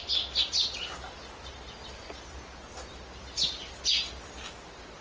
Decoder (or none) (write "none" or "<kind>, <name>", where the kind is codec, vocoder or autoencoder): none